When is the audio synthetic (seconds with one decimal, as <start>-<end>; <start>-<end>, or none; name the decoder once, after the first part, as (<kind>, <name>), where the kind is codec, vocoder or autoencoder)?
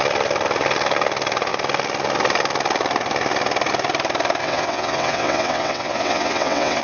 4.4-6.8 (vocoder, WaveNeXt)